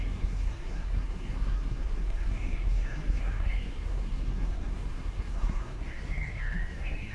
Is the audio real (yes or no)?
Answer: no